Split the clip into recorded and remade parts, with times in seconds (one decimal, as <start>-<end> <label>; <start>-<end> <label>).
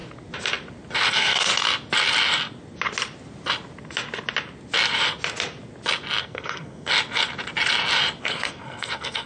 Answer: 0.0-1.1 recorded; 1.1-1.5 remade; 1.5-6.2 recorded; 6.2-6.9 remade; 6.9-8.2 recorded; 8.2-9.3 remade